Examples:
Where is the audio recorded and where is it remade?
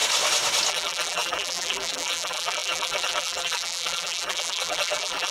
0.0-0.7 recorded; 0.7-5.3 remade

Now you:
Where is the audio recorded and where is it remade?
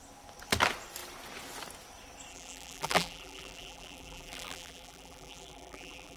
0.0-2.3 recorded; 2.3-6.2 remade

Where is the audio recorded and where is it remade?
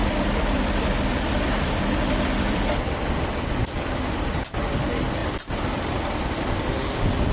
0.0-4.0 remade; 4.0-5.2 recorded; 5.2-6.3 remade; 6.3-7.3 recorded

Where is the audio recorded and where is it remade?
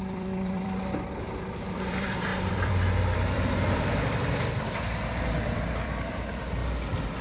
0.0-6.6 remade; 6.6-7.2 recorded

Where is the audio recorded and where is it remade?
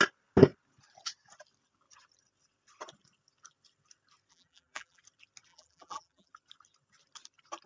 0.0-4.3 recorded; 4.3-5.0 remade; 5.0-5.5 recorded; 5.5-6.3 remade; 6.3-7.7 recorded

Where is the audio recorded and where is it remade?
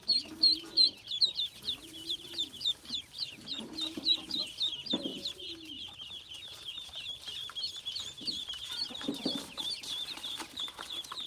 0.0-11.3 remade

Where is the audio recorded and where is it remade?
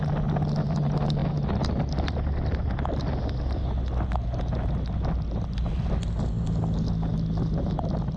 0.0-8.2 recorded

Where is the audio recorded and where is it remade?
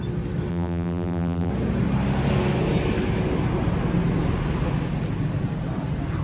0.0-0.5 recorded; 0.5-1.5 remade; 1.5-6.2 recorded